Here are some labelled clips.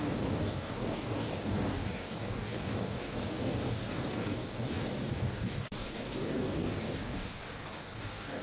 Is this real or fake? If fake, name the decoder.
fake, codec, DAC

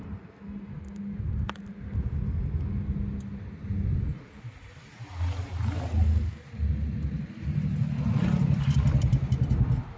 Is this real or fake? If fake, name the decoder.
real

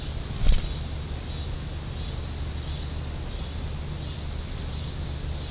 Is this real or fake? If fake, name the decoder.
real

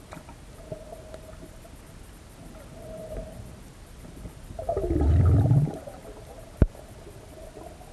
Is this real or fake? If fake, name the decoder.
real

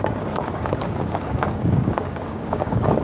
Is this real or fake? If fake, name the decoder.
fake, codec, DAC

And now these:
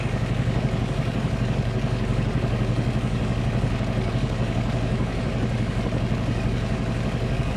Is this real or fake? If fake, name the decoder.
fake, codec, DAC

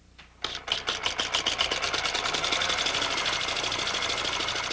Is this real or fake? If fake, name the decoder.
real